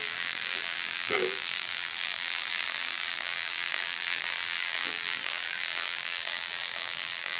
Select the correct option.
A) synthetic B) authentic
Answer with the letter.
A